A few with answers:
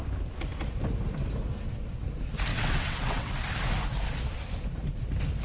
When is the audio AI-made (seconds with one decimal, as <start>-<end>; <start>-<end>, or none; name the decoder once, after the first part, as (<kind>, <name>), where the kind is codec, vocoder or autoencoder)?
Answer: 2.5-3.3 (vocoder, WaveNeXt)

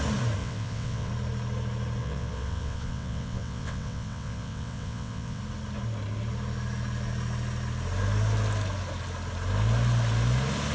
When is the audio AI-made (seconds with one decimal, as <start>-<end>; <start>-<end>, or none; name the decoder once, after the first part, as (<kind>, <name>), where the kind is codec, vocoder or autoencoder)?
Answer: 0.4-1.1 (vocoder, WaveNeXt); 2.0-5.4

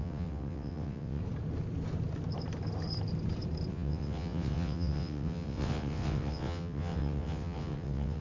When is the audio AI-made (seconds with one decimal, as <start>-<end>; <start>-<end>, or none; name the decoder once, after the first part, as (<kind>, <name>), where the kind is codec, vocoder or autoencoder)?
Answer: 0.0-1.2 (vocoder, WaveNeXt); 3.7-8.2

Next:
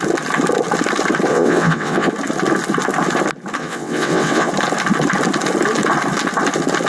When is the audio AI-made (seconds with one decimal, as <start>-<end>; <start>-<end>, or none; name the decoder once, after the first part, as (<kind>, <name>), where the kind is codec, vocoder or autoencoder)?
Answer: 1.3-2.1 (vocoder, WaveNeXt); 3.6-4.5

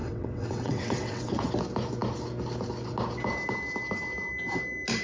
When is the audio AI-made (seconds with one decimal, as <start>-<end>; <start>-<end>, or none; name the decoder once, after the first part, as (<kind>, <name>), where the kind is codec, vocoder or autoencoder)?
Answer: 0.0-1.5 (vocoder, WaveNeXt)

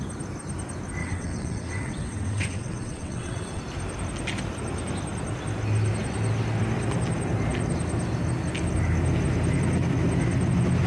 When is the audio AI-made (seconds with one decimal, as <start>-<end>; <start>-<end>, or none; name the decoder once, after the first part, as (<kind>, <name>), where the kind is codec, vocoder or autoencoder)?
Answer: 1.0-3.6 (vocoder, WaveNeXt)